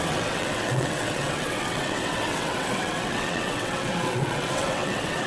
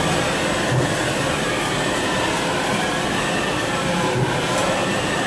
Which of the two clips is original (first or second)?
second